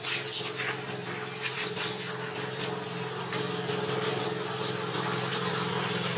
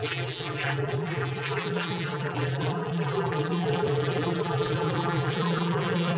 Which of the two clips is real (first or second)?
first